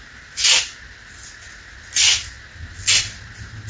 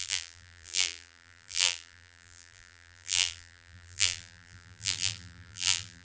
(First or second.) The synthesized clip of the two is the second